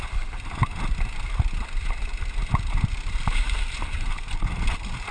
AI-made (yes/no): no